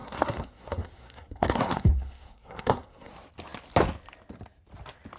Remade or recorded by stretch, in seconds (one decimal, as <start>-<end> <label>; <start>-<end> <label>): 0.0-3.1 remade; 3.1-5.2 recorded